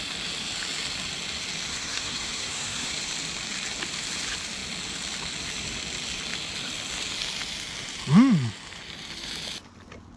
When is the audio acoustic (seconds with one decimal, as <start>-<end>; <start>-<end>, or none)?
0.0-1.7; 2.9-10.2